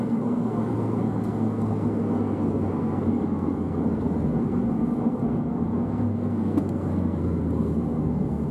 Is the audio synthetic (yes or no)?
yes